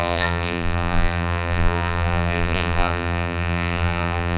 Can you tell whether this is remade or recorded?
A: remade